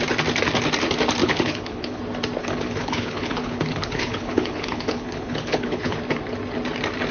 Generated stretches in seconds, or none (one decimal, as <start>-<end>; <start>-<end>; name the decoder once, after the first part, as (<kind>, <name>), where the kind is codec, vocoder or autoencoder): 1.2-2.0 (codec, HILCodec); 2.4-6.0